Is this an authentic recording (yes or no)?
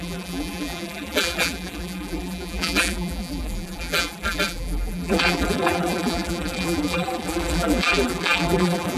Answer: no